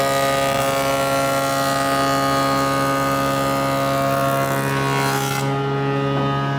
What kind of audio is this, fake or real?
real